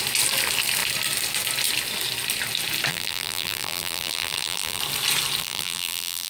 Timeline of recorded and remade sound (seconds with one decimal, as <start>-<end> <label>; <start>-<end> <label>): 0.0-2.9 recorded; 2.9-4.8 remade; 4.8-5.4 recorded; 5.4-6.3 remade